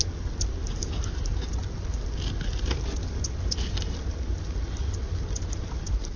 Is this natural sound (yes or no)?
yes